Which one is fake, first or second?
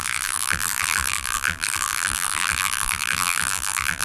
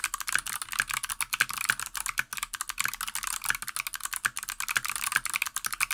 first